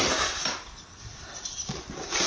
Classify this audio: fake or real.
fake